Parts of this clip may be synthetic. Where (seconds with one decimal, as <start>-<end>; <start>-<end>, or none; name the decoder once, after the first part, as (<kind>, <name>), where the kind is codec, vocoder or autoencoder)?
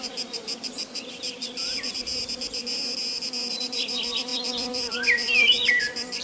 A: 0.0-2.1 (vocoder, BigVGAN v2); 3.5-6.2